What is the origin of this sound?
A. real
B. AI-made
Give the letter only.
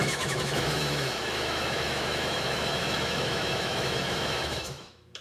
B